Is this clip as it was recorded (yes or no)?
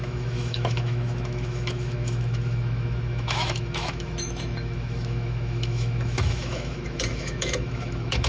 no